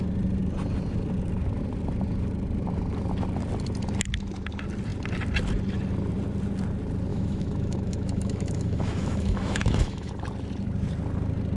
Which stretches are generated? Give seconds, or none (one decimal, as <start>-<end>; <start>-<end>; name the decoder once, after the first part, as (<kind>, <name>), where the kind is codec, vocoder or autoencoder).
7.1-10.1 (autoencoder, DAC-VAE)